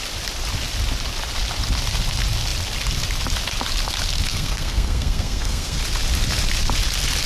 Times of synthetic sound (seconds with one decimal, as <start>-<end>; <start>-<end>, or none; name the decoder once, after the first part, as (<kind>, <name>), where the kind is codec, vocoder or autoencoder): 4.3-5.8 (codec, SNAC)